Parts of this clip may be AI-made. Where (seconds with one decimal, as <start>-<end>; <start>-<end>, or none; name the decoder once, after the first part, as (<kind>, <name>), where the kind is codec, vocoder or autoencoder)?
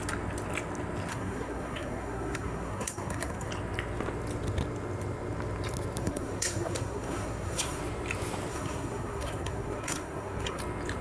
1.1-3.5 (codec, SNAC); 6.0-7.8; 8.5-10.6